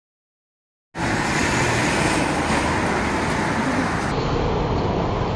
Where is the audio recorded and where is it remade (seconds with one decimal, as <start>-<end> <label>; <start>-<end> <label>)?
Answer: 0.0-5.4 recorded